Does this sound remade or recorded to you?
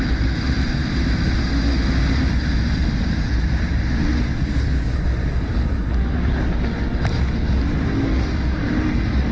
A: recorded